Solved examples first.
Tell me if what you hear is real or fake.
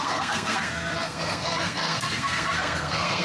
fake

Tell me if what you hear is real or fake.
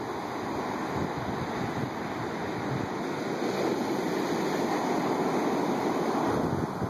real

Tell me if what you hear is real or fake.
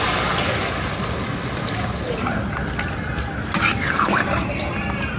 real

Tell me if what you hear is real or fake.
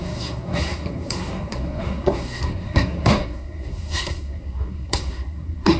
fake